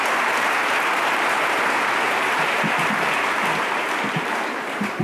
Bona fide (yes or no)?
no